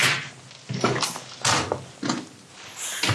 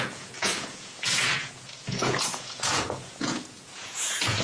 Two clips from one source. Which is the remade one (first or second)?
second